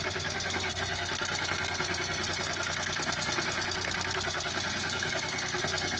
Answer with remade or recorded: remade